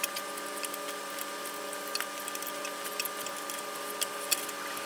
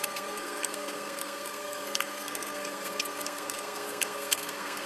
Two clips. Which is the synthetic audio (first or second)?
second